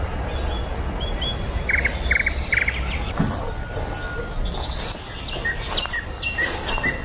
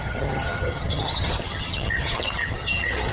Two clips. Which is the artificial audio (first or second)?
second